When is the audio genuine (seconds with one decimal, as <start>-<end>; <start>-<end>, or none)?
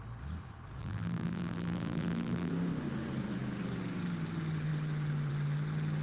0.0-0.8; 2.5-6.0